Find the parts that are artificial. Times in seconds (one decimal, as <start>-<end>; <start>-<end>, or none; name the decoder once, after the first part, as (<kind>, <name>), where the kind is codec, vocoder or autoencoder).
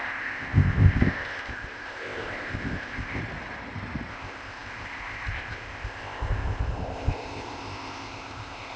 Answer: 0.0-3.2 (codec, ZipCodec); 4.1-8.8